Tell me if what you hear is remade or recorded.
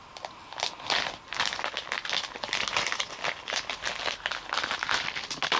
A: recorded